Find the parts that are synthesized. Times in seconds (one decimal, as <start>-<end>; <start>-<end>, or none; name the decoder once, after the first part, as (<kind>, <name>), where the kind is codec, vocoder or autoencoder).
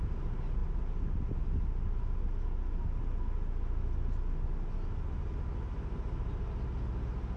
none